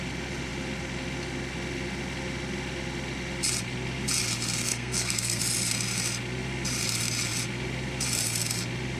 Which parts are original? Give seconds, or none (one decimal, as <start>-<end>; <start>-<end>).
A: 0.0-4.7; 5.4-9.0